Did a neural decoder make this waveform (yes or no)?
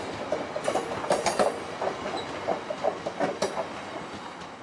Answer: no